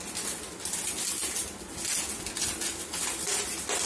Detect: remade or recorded recorded